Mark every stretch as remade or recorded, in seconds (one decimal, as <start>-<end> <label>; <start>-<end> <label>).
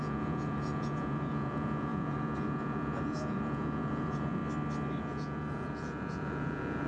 0.0-4.4 remade; 4.4-5.0 recorded; 5.0-6.9 remade